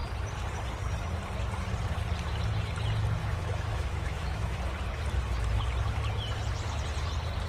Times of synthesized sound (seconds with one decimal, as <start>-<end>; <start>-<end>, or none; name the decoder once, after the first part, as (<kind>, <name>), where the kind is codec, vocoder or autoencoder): 3.2-4.6 (autoencoder, DAC-VAE)